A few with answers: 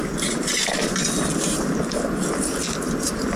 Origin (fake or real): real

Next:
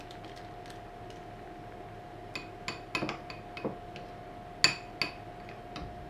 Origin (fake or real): real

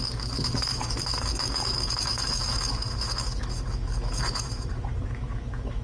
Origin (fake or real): fake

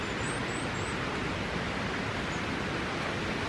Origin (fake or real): real